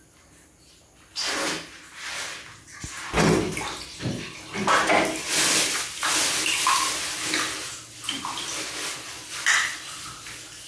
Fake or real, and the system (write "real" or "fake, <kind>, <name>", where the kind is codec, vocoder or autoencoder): real